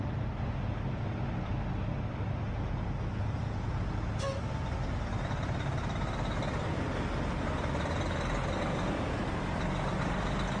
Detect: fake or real real